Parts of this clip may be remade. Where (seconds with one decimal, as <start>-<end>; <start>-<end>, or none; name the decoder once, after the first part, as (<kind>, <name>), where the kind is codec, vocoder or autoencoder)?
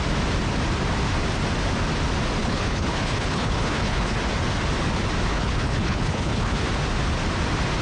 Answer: 2.4-4.2 (codec, HILCodec); 5.3-6.7